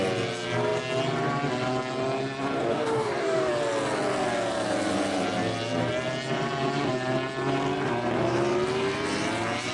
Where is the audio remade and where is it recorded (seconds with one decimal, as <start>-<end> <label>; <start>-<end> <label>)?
0.0-2.7 recorded; 2.7-3.5 remade; 3.5-9.7 recorded

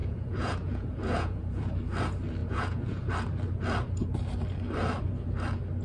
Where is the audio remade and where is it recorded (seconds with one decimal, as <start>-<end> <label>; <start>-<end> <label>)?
0.0-1.7 remade; 1.7-2.4 recorded; 2.4-3.1 remade; 3.1-5.8 recorded

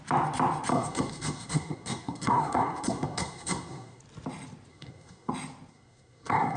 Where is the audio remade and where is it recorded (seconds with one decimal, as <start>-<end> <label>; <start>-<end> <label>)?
0.0-0.7 recorded; 0.7-4.0 remade; 4.0-4.7 recorded; 4.7-5.3 remade; 5.3-5.7 recorded; 5.7-6.6 remade